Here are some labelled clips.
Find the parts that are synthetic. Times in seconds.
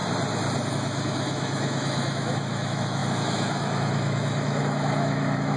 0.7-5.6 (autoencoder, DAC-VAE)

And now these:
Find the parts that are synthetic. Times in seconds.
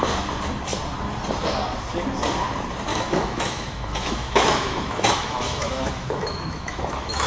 2.9-7.3 (autoencoder, DAC-VAE)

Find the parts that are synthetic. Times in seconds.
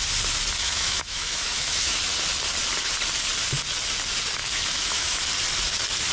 0.6-2.0 (autoencoder, DAC-VAE); 4.4-5.3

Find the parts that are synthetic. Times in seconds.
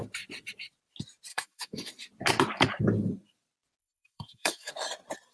1.3-1.9 (autoencoder, DAC-VAE); 3.8-4.7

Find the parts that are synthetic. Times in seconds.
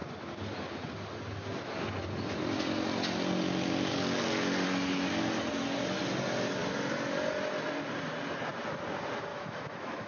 9.3-10.1 (autoencoder, DAC-VAE)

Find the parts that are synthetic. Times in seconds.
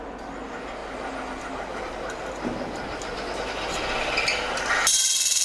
none